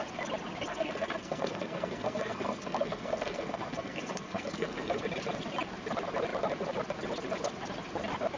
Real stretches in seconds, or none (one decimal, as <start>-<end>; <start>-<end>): 0.0-0.7; 5.0-8.4

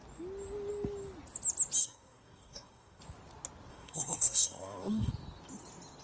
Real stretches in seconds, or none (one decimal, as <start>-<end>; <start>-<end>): 0.0-1.8; 3.0-3.7; 5.1-6.0

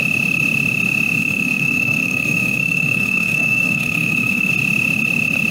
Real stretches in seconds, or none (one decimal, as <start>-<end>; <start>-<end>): 0.0-1.2; 4.5-5.5

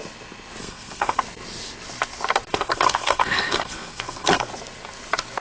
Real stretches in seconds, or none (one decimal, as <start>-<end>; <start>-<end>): 0.0-0.6; 1.2-2.5; 4.5-5.4

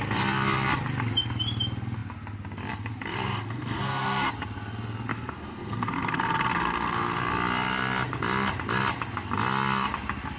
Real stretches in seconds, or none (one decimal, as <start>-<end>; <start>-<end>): 0.0-3.1; 4.3-5.1; 7.2-10.4

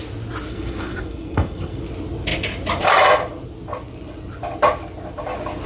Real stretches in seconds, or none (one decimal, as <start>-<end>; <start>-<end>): 0.0-0.5; 1.8-5.7